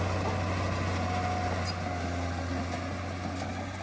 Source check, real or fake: real